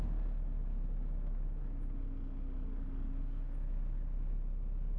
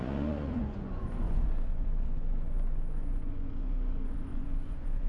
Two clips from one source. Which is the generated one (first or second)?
second